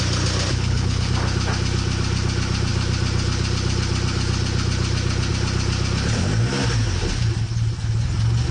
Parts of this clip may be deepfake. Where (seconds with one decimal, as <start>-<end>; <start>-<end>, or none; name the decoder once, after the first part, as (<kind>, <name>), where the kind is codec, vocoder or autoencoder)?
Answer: 0.5-1.1 (codec, HILCodec)